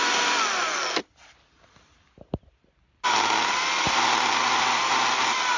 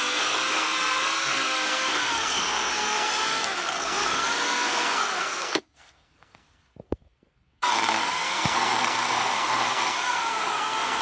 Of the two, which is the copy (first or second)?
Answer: second